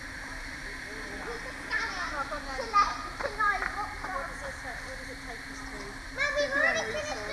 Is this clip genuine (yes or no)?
yes